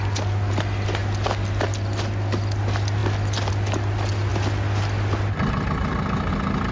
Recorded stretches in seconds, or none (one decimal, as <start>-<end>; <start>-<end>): 0.0-6.7